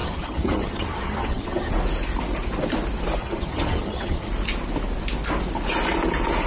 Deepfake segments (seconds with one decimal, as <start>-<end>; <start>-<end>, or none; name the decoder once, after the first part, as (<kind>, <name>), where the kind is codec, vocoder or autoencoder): 0.0-1.7 (vocoder, HiFi-GAN); 3.2-4.3

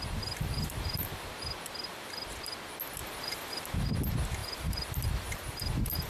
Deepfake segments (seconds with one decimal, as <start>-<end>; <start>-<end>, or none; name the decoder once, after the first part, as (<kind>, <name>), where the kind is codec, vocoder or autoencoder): 0.5-1.3 (vocoder, BigVGAN v2); 3.0-3.9; 4.4-6.1